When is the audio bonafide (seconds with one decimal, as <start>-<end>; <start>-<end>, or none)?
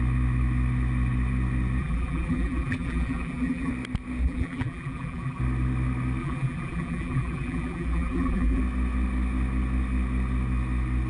0.0-1.8; 3.7-4.2; 5.4-6.2; 8.6-11.1